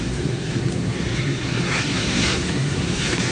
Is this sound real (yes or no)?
no